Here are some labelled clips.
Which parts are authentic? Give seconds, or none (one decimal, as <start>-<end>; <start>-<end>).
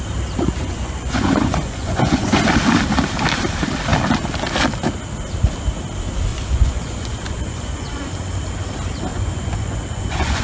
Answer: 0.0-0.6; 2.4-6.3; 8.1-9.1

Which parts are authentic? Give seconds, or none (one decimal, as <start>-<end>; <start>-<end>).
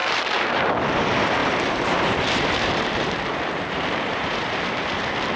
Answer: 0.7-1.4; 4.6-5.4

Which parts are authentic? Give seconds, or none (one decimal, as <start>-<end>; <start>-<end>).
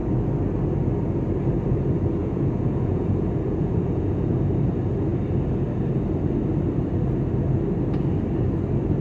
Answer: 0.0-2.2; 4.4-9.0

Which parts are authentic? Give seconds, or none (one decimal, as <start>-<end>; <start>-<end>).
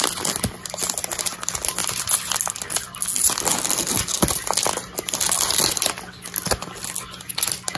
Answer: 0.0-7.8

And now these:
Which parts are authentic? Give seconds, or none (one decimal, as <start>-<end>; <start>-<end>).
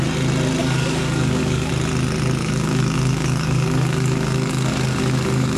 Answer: 0.0-0.6; 1.7-2.4